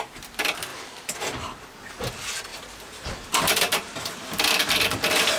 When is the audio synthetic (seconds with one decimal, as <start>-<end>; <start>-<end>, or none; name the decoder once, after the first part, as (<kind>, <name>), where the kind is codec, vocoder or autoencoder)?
0.0-5.4 (vocoder, BigVGAN v2)